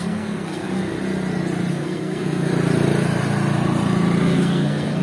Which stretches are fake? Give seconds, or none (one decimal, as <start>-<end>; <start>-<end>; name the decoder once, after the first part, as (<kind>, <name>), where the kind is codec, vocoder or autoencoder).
0.0-0.9 (codec, SNAC); 1.7-2.5; 4.2-5.0